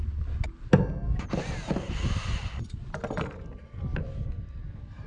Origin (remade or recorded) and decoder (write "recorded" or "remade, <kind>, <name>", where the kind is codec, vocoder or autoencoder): recorded